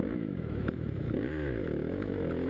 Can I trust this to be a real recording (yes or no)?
no